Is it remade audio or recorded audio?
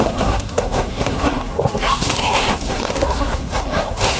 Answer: remade